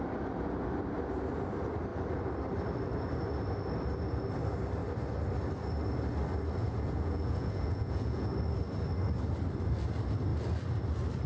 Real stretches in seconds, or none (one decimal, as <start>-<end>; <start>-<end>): 0.0-6.6; 8.3-11.3